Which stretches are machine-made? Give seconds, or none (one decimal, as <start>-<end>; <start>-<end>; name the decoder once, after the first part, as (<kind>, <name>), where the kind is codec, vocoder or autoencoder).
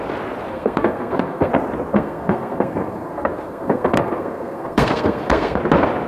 0.5-1.5 (codec, SNAC); 1.9-5.6